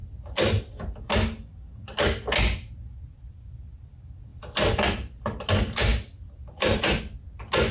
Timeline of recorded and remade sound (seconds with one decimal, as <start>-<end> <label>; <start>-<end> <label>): 0.0-4.3 recorded; 4.3-5.5 remade; 5.5-5.9 recorded; 5.9-7.0 remade; 7.0-7.7 recorded